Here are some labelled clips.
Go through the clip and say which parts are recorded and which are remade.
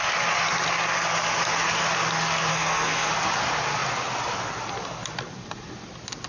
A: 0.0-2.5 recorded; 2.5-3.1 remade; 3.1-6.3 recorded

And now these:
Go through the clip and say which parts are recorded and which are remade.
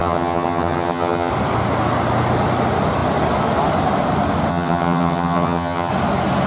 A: 0.0-1.3 remade; 1.3-4.5 recorded; 4.5-5.9 remade; 5.9-6.5 recorded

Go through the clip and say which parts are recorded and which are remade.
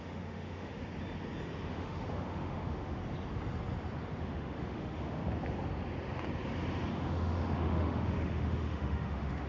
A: 0.0-0.8 remade; 0.8-1.7 recorded; 1.7-3.0 remade; 3.0-4.2 recorded; 4.2-5.2 remade; 5.2-6.9 recorded; 6.9-9.5 remade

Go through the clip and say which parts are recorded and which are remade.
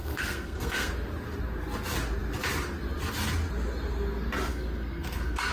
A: 0.0-0.9 remade; 0.9-4.5 recorded; 4.5-5.5 remade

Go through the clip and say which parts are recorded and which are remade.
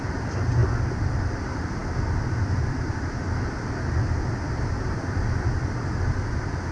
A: 0.0-6.7 recorded